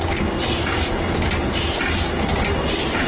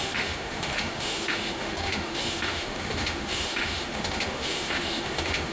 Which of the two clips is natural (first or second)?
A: first